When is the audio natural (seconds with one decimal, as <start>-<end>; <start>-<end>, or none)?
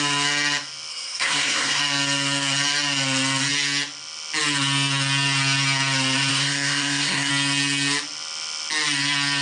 0.0-0.9; 1.8-6.3; 7.3-9.4